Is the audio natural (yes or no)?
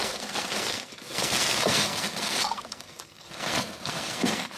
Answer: no